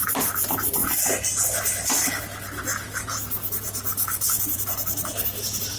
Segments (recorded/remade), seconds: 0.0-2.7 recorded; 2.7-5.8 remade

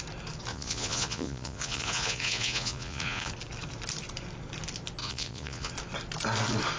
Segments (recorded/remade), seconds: 0.0-0.5 recorded; 0.5-3.3 remade; 3.3-5.0 recorded; 5.0-5.7 remade; 5.7-6.8 recorded